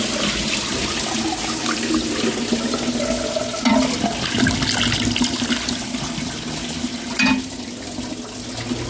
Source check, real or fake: real